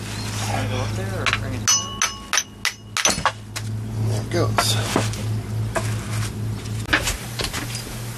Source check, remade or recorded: recorded